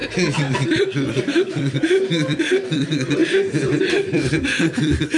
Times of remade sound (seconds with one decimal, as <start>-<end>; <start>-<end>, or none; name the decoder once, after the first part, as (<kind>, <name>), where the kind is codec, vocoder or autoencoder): 0.0-3.2 (vocoder, BigVGAN v2); 3.8-5.2